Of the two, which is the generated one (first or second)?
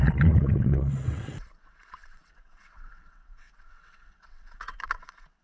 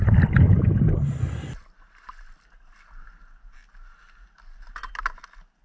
first